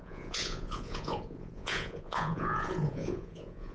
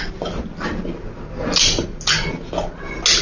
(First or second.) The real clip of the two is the second